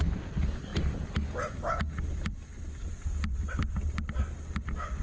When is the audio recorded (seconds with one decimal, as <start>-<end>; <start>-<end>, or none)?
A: 0.0-5.0